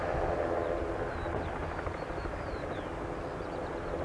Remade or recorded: recorded